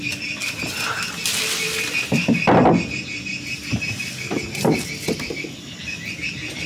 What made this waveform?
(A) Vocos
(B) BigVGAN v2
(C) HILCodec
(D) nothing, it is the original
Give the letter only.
D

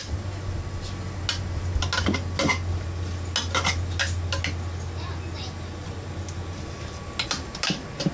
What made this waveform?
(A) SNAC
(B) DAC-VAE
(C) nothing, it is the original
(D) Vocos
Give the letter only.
C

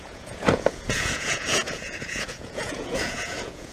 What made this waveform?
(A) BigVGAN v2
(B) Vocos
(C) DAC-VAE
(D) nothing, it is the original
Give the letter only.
B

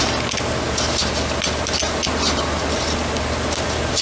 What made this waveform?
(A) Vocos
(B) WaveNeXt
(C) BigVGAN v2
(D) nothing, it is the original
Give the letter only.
D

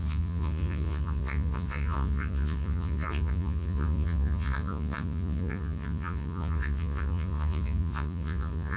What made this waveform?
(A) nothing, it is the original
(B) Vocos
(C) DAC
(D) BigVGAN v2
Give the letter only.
B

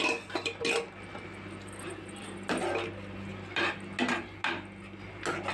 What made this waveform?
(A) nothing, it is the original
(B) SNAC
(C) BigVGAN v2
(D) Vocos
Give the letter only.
A